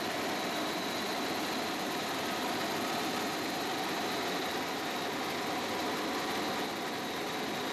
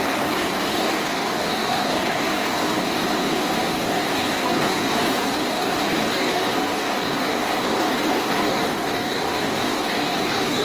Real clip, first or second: first